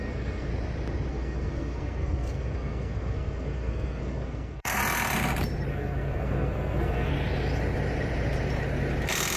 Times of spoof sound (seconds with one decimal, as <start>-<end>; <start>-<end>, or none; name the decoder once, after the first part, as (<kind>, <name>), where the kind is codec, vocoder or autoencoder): 0.0-0.5 (codec, SNAC); 1.1-4.8; 5.7-7.1